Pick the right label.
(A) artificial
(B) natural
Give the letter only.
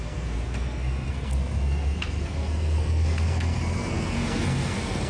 A